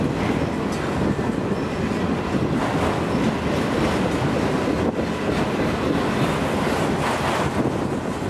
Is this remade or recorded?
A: recorded